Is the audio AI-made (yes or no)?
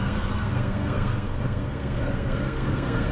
yes